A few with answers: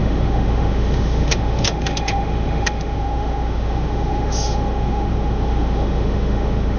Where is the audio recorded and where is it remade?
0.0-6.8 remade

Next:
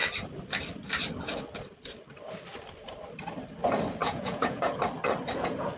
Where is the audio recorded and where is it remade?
0.0-4.0 recorded; 4.0-4.7 remade; 4.7-5.8 recorded

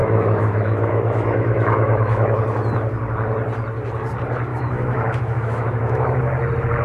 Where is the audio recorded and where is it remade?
0.0-2.4 remade; 2.4-4.5 recorded; 4.5-6.2 remade; 6.2-6.8 recorded

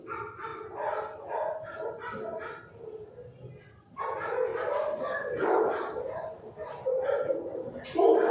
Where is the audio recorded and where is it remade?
0.0-8.3 recorded

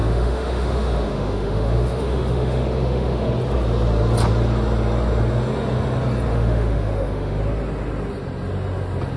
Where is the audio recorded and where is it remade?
0.0-3.3 remade; 3.3-6.3 recorded; 6.3-7.4 remade; 7.4-9.2 recorded

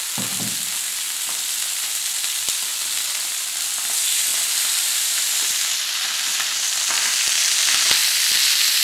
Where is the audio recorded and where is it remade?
0.0-4.3 recorded; 4.3-7.4 remade; 7.4-8.0 recorded; 8.0-8.8 remade